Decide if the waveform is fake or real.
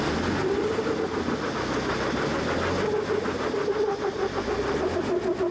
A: real